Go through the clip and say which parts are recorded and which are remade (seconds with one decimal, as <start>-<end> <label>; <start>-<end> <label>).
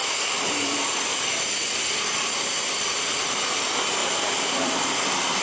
0.0-5.4 remade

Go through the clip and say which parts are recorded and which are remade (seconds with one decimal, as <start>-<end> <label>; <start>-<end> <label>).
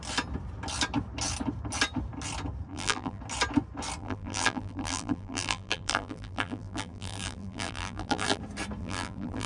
0.0-2.7 recorded; 2.7-3.2 remade; 3.2-4.0 recorded; 4.0-8.4 remade; 8.4-8.8 recorded; 8.8-9.5 remade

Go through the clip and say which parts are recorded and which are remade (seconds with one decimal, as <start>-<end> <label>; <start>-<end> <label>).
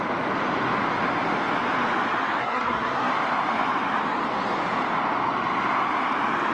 0.0-2.4 recorded; 2.4-3.1 remade; 3.1-6.5 recorded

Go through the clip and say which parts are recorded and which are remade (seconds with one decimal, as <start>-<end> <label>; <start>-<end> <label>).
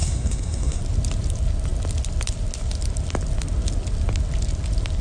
0.0-0.8 remade; 0.8-5.0 recorded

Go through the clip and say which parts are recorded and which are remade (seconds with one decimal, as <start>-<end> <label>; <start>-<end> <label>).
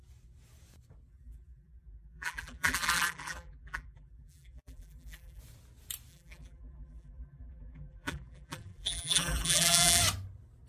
0.0-1.1 recorded; 1.1-5.4 remade; 5.4-6.1 recorded; 6.1-10.0 remade; 10.0-10.7 recorded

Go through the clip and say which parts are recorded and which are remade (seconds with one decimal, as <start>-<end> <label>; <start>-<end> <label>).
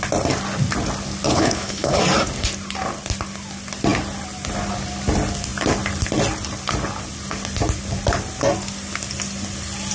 0.0-1.3 recorded; 1.3-2.0 remade; 2.0-9.9 recorded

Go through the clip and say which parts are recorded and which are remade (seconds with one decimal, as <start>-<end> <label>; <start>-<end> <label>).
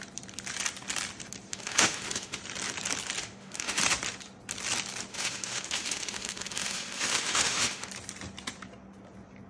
0.0-1.5 recorded; 1.5-2.4 remade; 2.4-3.2 recorded; 3.2-3.8 remade; 3.8-5.1 recorded; 5.1-7.9 remade; 7.9-9.5 recorded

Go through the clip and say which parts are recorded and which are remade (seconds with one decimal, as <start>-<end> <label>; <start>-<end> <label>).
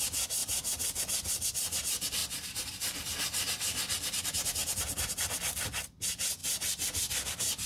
0.0-0.4 recorded; 0.4-1.0 remade; 1.0-2.2 recorded; 2.2-3.0 remade; 3.0-4.6 recorded; 4.6-5.1 remade; 5.1-6.4 recorded; 6.4-7.1 remade; 7.1-7.7 recorded